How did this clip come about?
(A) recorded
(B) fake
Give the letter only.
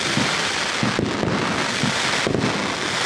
A